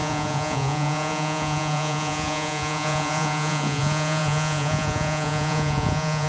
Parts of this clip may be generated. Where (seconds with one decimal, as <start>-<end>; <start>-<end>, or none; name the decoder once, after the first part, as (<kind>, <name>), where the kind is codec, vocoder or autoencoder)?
0.0-6.3 (vocoder, Vocos)